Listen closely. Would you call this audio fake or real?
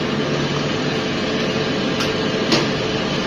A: real